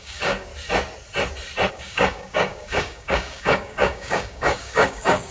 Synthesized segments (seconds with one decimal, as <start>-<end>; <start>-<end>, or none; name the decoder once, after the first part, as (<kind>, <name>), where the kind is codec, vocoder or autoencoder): 0.0-0.5 (codec, DAC); 1.7-5.3